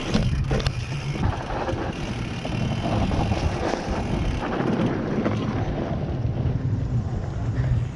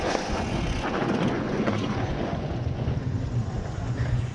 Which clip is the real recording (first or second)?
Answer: first